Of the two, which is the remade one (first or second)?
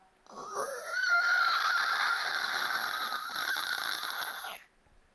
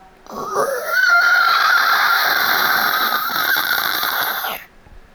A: second